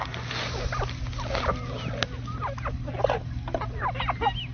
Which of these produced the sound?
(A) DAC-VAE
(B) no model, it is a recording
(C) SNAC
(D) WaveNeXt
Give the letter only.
B